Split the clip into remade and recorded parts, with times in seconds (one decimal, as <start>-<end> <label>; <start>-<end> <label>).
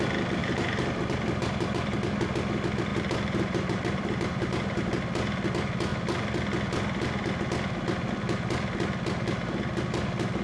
0.0-0.4 recorded; 0.4-2.2 remade; 2.2-2.9 recorded; 2.9-5.0 remade; 5.0-10.4 recorded